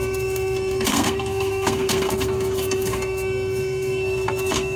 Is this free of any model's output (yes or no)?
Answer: no